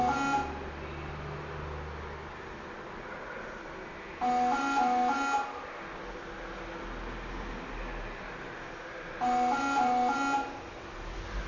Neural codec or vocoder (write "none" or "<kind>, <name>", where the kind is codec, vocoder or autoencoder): none